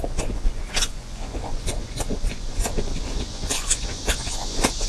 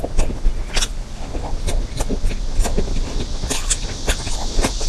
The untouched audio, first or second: second